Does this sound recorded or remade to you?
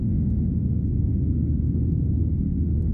remade